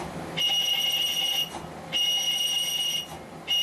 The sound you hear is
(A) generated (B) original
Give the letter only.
B